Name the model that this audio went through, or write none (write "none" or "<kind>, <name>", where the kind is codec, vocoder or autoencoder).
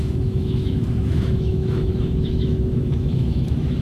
autoencoder, DAC-VAE